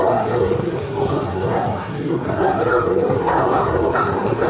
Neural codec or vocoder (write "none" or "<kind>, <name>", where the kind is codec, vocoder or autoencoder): codec, SNAC